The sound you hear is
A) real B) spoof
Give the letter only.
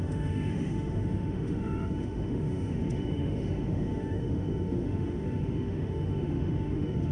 B